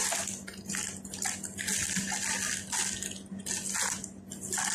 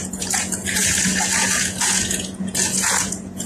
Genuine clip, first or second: first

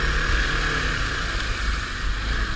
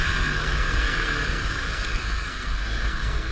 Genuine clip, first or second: first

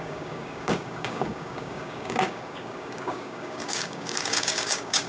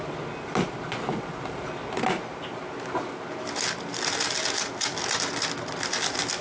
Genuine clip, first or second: second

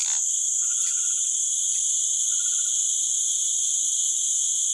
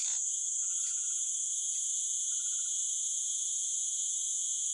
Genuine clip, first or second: first